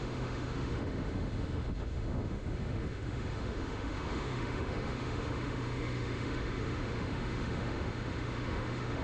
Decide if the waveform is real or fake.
fake